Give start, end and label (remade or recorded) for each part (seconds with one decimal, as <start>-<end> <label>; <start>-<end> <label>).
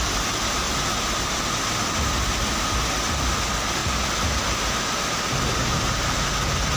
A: 0.0-6.8 recorded